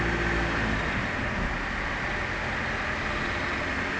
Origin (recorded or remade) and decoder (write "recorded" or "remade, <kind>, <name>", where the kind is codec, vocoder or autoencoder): recorded